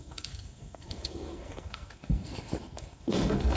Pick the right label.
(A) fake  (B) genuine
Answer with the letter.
A